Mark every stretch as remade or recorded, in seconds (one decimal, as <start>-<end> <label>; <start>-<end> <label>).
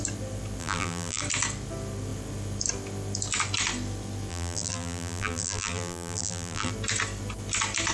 0.0-0.6 recorded; 0.6-1.2 remade; 1.2-4.3 recorded; 4.3-6.7 remade; 6.7-7.9 recorded